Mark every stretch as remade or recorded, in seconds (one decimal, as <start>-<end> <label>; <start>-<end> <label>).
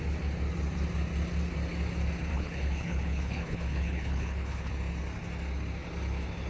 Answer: 0.0-2.3 recorded; 2.3-4.7 remade; 4.7-6.5 recorded